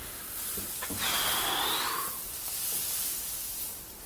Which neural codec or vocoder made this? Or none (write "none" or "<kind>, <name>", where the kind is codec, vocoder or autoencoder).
none